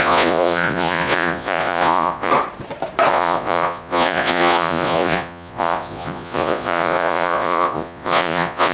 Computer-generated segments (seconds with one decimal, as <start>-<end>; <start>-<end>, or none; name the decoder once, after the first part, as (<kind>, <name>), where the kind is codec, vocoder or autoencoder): 0.0-2.3 (vocoder, Vocos); 3.1-8.7